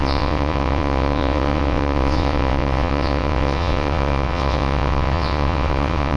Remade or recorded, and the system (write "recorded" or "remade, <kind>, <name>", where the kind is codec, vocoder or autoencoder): remade, vocoder, WaveNeXt